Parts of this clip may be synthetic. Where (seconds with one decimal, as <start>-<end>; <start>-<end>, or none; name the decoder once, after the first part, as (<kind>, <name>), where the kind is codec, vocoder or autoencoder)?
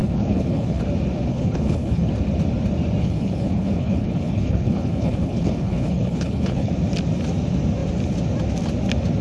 0.0-0.8 (codec, HILCodec); 1.3-2.1; 3.0-6.7